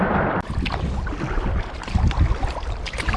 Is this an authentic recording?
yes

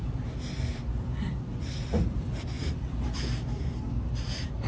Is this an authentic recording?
no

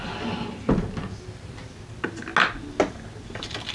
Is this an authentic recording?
yes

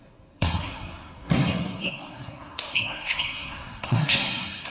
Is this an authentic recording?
no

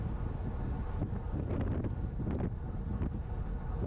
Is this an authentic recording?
yes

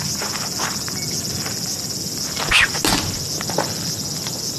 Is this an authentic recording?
yes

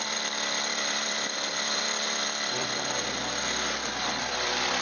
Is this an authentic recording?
no